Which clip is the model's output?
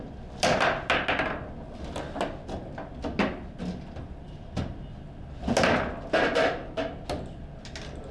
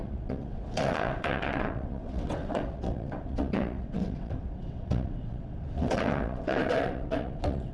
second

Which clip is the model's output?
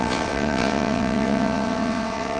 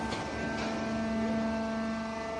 first